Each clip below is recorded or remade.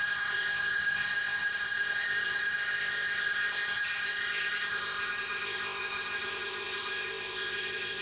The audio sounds remade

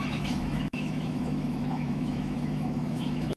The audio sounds remade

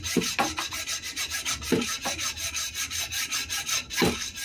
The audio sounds recorded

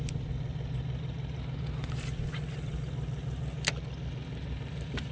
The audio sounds recorded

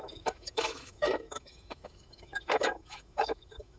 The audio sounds remade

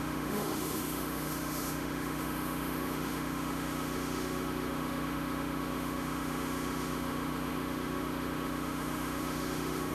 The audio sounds remade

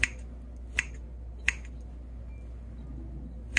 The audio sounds recorded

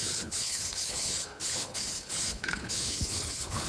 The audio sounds remade